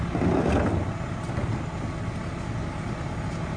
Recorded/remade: recorded